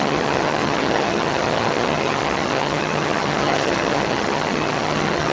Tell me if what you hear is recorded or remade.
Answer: remade